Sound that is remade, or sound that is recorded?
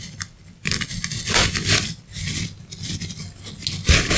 recorded